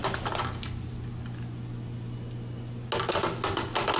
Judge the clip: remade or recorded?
recorded